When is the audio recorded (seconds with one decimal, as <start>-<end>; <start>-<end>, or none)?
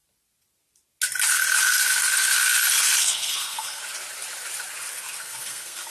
0.0-3.0; 3.8-4.9